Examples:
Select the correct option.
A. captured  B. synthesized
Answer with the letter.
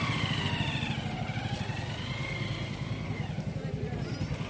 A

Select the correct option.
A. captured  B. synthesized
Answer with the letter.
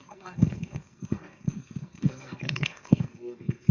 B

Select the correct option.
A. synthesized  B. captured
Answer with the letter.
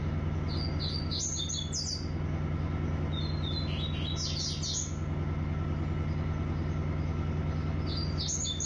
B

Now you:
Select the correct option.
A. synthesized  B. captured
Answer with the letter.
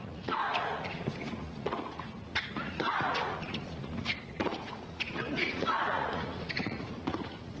A